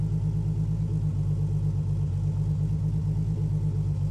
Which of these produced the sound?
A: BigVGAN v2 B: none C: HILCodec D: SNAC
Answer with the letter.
B